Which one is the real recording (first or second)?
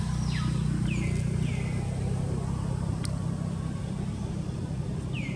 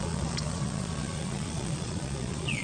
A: first